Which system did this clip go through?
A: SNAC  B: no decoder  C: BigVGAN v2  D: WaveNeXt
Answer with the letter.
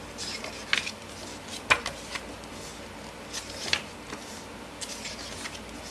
B